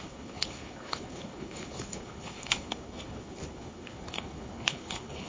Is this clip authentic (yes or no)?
no